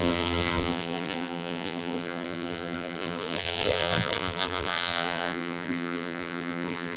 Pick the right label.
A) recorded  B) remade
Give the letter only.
B